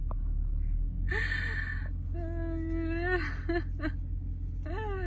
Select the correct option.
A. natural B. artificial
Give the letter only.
A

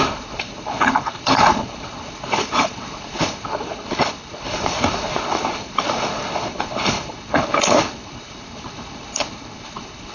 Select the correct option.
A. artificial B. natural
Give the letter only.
A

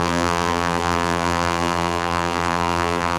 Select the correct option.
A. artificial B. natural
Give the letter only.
A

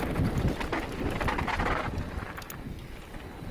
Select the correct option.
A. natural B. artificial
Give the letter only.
A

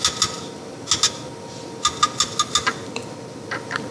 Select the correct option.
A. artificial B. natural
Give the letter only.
B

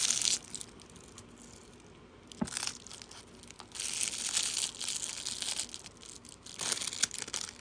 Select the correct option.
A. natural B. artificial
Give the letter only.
A